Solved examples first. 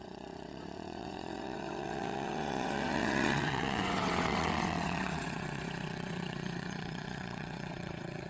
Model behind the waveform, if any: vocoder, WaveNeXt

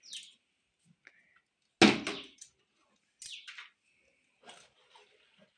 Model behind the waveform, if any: none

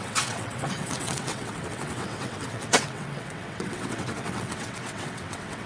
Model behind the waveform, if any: vocoder, WaveNeXt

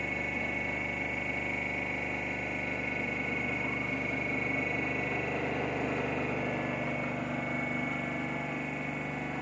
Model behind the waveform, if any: none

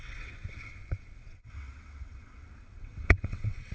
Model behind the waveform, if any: vocoder, WaveNeXt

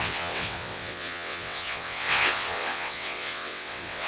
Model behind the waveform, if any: vocoder, WaveNeXt